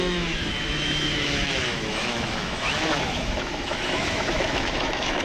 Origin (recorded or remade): remade